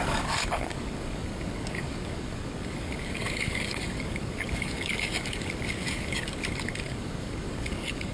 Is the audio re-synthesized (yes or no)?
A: yes